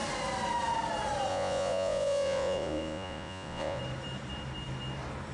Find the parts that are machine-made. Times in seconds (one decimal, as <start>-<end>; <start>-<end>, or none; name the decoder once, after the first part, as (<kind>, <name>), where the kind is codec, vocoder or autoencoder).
1.3-3.8 (vocoder, Vocos)